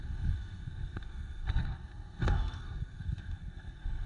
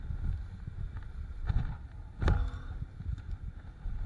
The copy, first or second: first